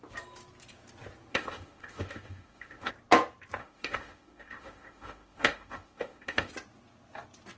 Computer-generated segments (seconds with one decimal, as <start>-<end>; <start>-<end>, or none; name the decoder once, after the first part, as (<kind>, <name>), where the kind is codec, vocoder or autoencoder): 1.3-2.9 (autoencoder, DAC-VAE); 3.6-6.5